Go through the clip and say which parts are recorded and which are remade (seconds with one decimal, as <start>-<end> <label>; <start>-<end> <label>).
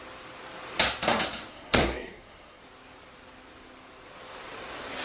0.0-1.5 recorded; 1.5-2.6 remade; 2.6-5.0 recorded